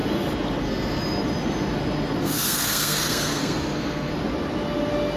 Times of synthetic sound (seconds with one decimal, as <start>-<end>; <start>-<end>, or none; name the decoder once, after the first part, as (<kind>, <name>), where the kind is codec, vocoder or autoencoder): 0.6-1.0 (codec, SNAC); 2.2-4.1